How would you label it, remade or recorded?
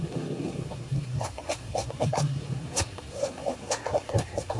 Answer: remade